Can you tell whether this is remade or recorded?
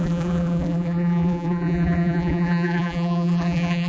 remade